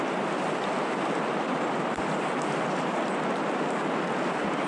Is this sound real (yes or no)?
yes